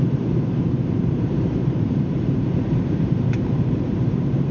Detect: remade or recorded remade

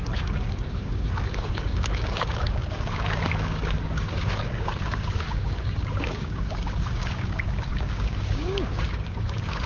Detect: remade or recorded remade